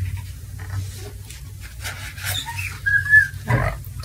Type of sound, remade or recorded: recorded